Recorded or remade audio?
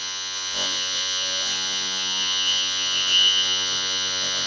remade